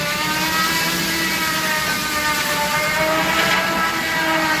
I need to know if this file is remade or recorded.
recorded